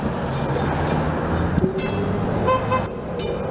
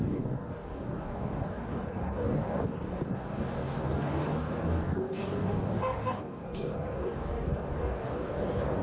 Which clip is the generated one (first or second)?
second